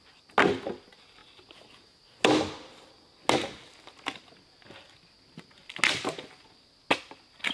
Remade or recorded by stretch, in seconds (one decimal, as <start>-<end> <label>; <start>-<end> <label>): 0.0-7.5 recorded